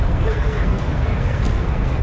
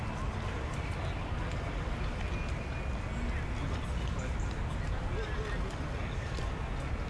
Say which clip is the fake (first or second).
first